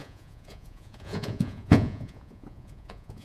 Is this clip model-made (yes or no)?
yes